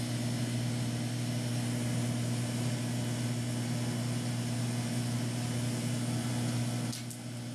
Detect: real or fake real